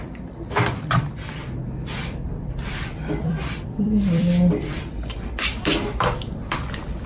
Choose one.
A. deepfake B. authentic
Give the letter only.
A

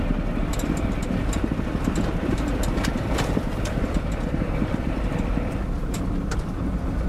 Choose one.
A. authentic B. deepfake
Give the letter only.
B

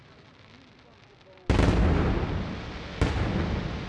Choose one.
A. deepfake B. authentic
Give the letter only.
B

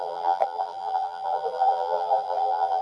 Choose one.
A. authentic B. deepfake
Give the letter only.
B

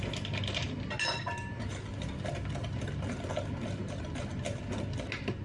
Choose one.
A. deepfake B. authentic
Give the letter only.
B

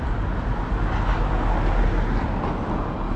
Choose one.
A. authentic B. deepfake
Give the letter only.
A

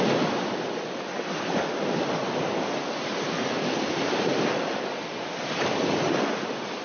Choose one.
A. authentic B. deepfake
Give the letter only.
A